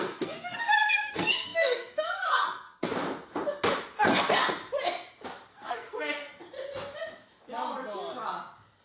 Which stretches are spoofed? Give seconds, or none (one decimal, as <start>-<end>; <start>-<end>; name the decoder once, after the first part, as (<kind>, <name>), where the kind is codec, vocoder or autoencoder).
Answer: 0.0-2.9 (codec, SNAC); 5.5-6.3

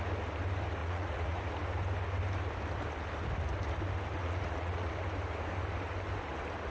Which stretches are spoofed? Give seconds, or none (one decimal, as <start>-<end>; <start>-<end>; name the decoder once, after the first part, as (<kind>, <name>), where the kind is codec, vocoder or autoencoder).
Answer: 0.8-1.4 (vocoder, Vocos); 4.2-4.9